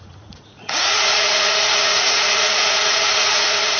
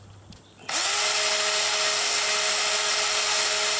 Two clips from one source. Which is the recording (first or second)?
second